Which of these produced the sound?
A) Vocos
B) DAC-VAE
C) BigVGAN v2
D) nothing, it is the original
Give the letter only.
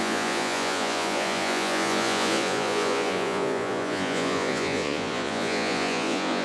A